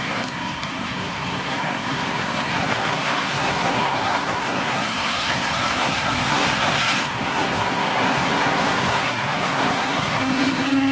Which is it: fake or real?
fake